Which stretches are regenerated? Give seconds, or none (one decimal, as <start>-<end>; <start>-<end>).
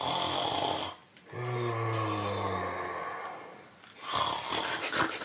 none